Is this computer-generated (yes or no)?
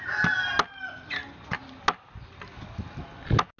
no